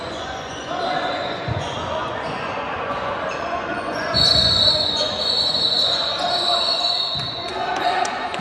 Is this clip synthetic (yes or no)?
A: yes